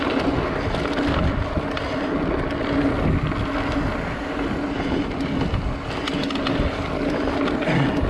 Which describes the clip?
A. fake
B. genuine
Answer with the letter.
B